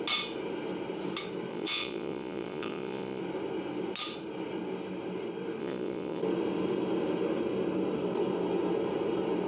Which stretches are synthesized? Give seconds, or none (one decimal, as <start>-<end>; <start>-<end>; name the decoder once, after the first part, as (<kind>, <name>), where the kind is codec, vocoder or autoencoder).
1.5-3.2 (vocoder, Vocos); 5.6-6.2